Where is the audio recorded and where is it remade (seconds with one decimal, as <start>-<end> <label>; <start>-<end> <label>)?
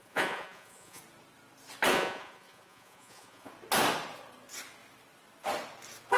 0.0-1.0 remade; 1.0-1.9 recorded; 1.9-3.5 remade; 3.5-6.2 recorded